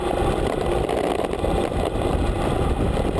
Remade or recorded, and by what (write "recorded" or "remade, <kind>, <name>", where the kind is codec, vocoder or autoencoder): recorded